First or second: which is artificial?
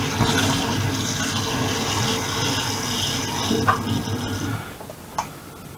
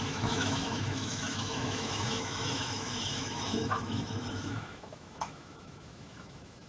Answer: second